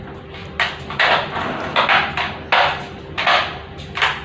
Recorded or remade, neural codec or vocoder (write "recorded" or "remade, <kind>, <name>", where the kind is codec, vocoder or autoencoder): recorded